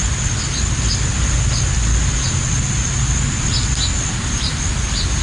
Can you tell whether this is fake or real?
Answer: real